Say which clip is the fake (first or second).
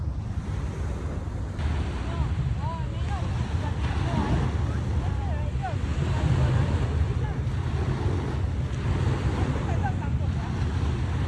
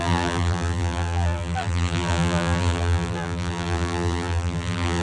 second